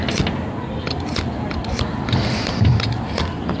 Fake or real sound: real